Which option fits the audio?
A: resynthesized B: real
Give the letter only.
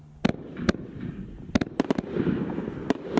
B